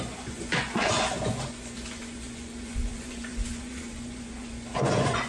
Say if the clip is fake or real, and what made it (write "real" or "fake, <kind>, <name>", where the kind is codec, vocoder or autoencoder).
fake, vocoder, Vocos